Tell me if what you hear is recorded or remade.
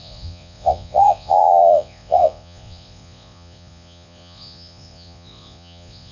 remade